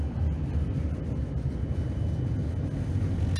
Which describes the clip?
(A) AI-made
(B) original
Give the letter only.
B